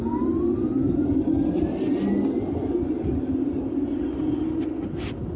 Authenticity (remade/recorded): recorded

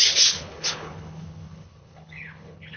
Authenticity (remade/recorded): remade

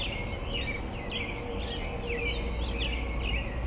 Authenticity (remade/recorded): recorded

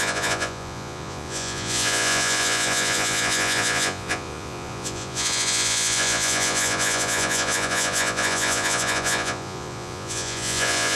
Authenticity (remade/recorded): remade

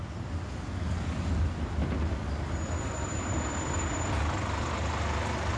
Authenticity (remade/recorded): recorded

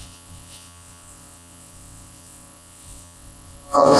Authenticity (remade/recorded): remade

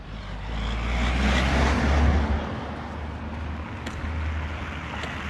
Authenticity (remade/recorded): recorded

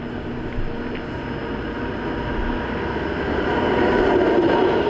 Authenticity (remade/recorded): recorded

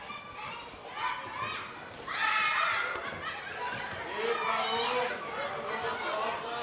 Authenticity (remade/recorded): recorded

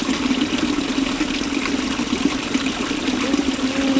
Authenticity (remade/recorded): recorded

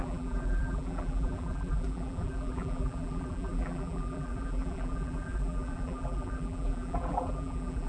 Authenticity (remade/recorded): remade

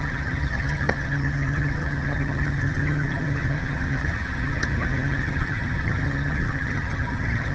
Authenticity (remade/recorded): remade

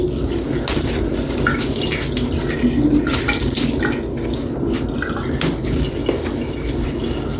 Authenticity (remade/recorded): recorded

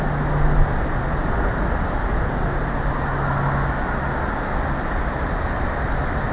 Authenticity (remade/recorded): recorded